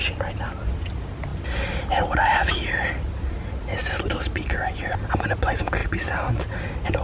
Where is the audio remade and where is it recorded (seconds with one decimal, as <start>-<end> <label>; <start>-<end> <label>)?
0.0-7.0 recorded